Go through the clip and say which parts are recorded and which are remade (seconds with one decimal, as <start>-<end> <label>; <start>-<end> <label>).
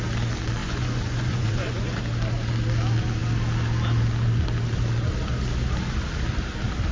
0.0-0.6 recorded; 0.6-2.0 remade; 2.0-6.9 recorded